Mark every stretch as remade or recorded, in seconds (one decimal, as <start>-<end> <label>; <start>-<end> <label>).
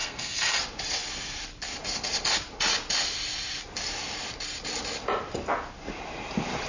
0.0-0.6 remade; 0.6-6.7 recorded